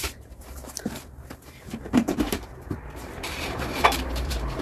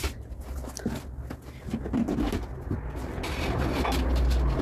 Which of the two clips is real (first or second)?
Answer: second